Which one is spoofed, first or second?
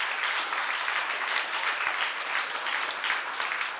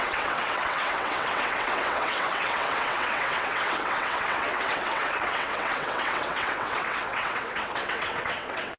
second